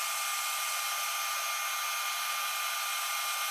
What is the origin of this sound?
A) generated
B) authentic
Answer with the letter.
B